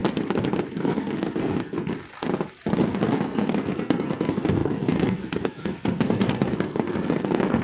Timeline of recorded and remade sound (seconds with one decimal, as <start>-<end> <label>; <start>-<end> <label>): 0.0-0.7 recorded; 0.7-1.8 remade; 1.8-2.8 recorded; 2.8-7.6 remade